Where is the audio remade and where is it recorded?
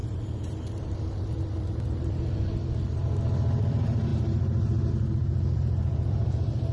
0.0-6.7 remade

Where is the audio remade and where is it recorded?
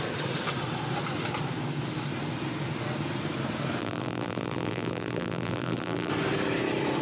0.0-3.8 recorded; 3.8-6.1 remade; 6.1-7.0 recorded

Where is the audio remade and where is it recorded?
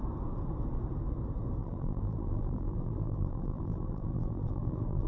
0.0-1.6 recorded; 1.6-5.1 remade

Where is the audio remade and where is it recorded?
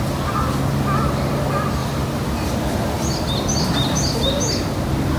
0.0-1.8 recorded; 1.8-4.3 remade; 4.3-5.2 recorded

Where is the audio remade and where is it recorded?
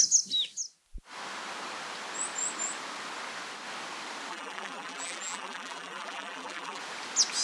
0.0-4.3 recorded; 4.3-6.8 remade; 6.8-7.4 recorded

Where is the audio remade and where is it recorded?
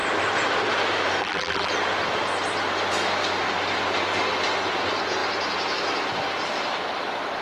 0.0-1.2 recorded; 1.2-1.7 remade; 1.7-7.4 recorded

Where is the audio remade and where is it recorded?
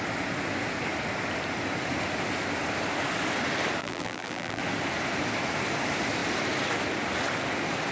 0.0-3.8 recorded; 3.8-4.6 remade; 4.6-7.9 recorded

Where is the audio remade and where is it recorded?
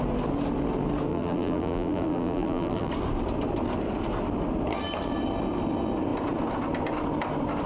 0.0-1.1 recorded; 1.1-2.9 remade; 2.9-7.7 recorded